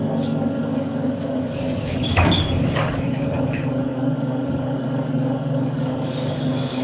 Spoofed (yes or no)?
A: yes